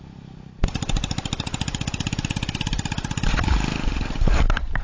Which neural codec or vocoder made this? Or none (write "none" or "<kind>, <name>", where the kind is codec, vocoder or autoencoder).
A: vocoder, BigVGAN v2